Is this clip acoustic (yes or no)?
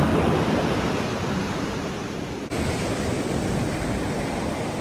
yes